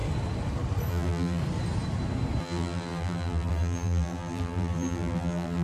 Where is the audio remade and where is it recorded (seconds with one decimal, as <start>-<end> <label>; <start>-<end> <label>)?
0.0-0.9 recorded; 0.9-1.4 remade; 1.4-2.4 recorded; 2.4-5.6 remade

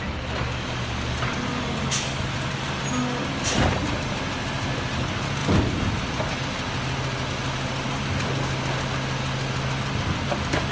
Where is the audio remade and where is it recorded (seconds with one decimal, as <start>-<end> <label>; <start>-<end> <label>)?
0.0-10.7 recorded

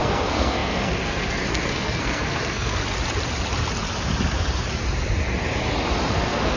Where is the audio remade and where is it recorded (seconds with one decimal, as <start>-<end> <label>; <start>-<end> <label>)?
0.0-2.8 remade; 2.8-6.1 recorded; 6.1-6.6 remade

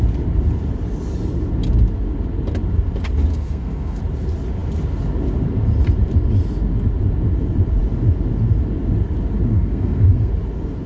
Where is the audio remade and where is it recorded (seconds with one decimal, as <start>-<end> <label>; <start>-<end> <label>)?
0.0-3.3 recorded; 3.3-4.0 remade; 4.0-9.5 recorded; 9.5-10.3 remade; 10.3-10.9 recorded

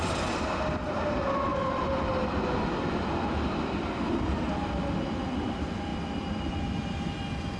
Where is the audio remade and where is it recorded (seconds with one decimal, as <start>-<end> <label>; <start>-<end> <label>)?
0.0-7.6 recorded

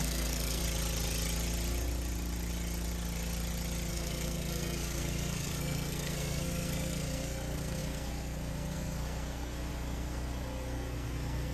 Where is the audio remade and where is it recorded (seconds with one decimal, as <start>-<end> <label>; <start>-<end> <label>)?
0.0-0.6 remade; 0.6-3.9 recorded; 3.9-11.5 remade

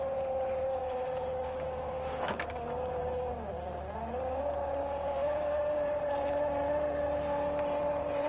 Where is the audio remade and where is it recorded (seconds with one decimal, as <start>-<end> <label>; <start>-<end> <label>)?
0.0-0.8 recorded; 0.8-3.3 remade; 3.3-4.8 recorded; 4.8-6.0 remade; 6.0-8.3 recorded